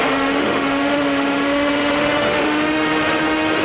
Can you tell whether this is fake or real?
fake